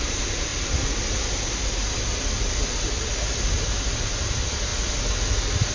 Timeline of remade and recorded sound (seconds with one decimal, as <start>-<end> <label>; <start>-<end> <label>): 0.0-0.5 remade; 0.5-3.9 recorded; 3.9-4.7 remade; 4.7-5.7 recorded